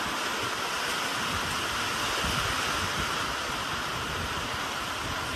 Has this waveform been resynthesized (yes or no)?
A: no